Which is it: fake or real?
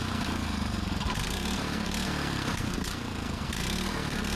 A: fake